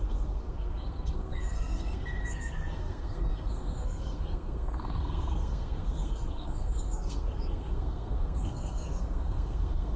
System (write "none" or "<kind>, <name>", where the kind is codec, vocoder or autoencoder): codec, SNAC